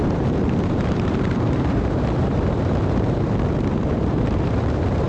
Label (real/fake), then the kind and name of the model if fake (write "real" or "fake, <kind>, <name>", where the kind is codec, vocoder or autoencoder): fake, vocoder, BigVGAN v2